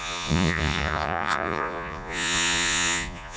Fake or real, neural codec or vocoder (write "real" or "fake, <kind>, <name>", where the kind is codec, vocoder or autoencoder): fake, vocoder, Vocos